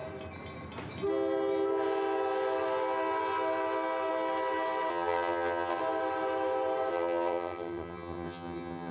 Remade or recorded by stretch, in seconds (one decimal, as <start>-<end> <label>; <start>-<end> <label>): 0.0-4.9 recorded; 4.9-5.8 remade; 5.8-6.9 recorded; 6.9-8.9 remade